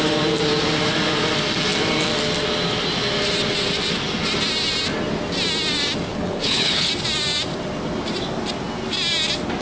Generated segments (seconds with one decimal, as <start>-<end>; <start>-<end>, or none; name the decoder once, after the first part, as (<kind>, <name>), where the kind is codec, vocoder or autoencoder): 6.1-6.9 (codec, HILCodec)